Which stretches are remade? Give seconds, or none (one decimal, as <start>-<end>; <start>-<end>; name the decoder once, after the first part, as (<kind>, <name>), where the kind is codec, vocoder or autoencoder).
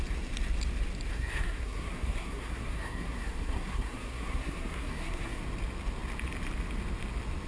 1.1-5.4 (codec, SNAC)